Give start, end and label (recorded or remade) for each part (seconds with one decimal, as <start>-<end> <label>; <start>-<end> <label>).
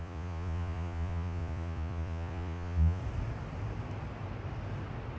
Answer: 0.0-3.0 remade; 3.0-5.2 recorded